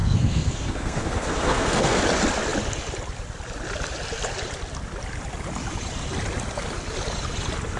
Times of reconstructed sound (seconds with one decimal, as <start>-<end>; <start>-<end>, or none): 0.0-2.0